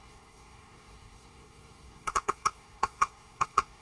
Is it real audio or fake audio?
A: fake